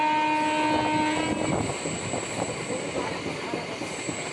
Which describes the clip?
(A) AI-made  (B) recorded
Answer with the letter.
B